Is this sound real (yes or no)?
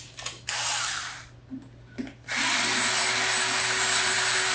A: yes